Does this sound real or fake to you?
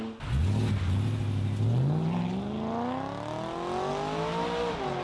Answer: real